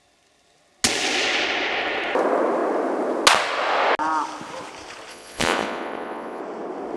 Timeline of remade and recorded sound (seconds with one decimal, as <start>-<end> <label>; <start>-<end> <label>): 0.0-5.1 recorded; 5.1-6.4 remade; 6.4-7.0 recorded